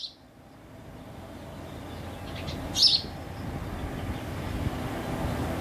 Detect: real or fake real